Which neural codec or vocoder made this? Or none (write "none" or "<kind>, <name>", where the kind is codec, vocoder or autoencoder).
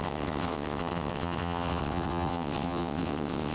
vocoder, WaveNeXt